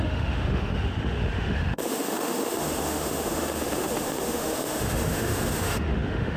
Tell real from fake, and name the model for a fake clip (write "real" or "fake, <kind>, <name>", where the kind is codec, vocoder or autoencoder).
fake, autoencoder, DAC-VAE